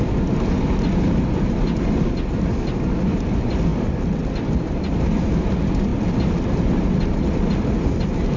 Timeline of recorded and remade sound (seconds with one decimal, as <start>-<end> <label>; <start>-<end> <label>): 0.0-5.9 recorded; 5.9-6.8 remade; 6.8-8.4 recorded